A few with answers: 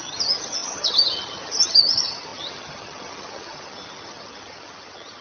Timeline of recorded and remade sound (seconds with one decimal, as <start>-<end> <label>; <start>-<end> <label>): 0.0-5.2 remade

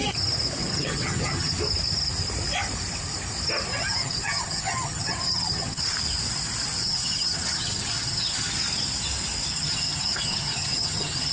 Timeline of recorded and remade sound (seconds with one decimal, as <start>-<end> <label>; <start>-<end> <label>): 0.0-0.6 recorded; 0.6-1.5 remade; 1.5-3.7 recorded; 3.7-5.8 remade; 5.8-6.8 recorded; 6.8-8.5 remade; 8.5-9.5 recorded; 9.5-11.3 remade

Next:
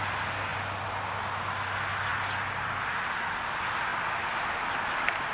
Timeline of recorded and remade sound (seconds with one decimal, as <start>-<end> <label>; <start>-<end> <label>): 0.0-5.3 recorded